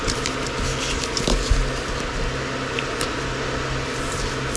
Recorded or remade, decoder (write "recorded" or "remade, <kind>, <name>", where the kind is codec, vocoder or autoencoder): recorded